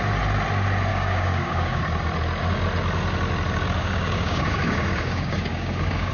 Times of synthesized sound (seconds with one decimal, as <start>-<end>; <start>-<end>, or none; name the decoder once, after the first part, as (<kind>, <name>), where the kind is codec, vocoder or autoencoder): 0.9-1.8 (codec, DAC); 3.8-6.1